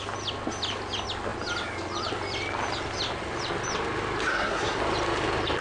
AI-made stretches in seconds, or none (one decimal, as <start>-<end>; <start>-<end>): 4.3-4.8